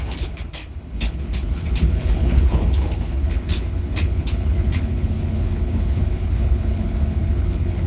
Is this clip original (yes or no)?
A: no